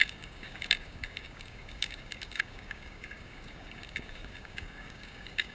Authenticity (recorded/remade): remade